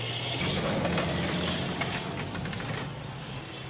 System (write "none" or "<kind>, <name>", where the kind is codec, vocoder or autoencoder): none